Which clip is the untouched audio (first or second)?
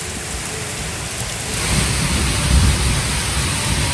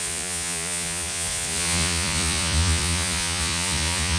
first